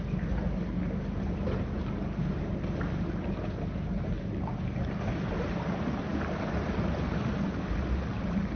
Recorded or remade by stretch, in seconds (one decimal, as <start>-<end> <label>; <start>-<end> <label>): 0.0-8.6 recorded